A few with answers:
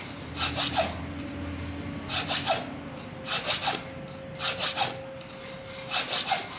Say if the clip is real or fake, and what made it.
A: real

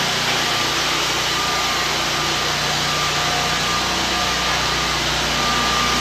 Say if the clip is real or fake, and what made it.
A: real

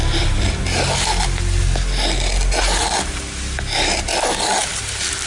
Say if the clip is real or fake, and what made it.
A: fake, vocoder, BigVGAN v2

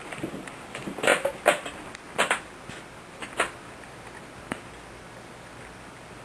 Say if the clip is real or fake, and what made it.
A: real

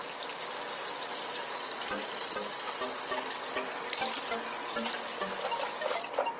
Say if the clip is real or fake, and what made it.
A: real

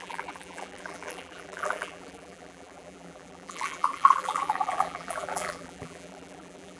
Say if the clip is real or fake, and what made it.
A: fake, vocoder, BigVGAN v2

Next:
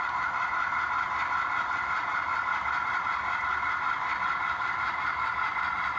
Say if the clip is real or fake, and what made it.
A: real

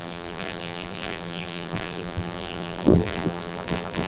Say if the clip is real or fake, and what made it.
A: fake, vocoder, BigVGAN v2